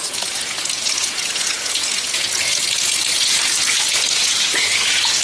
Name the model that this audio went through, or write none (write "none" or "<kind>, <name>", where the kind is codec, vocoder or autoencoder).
vocoder, Vocos